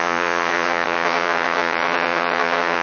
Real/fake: fake